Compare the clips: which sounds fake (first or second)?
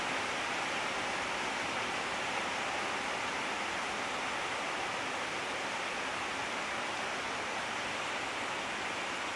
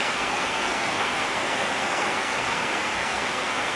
second